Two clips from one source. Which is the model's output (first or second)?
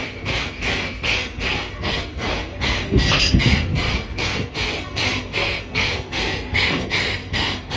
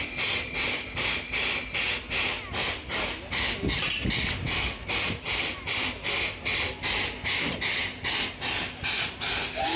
first